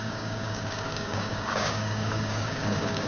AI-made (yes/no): yes